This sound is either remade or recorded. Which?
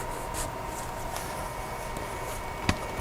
recorded